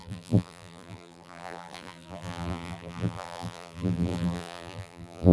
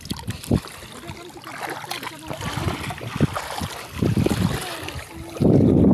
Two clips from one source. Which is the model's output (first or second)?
first